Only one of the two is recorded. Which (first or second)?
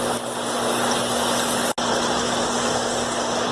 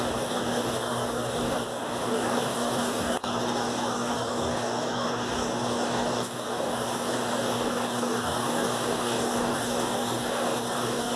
first